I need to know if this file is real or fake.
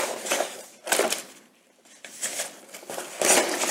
real